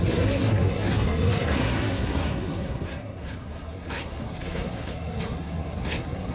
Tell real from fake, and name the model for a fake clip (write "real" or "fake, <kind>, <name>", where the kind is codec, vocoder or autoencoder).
fake, codec, SNAC